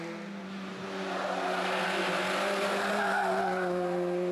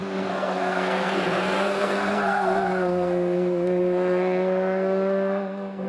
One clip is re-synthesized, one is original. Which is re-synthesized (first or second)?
second